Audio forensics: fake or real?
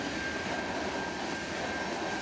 real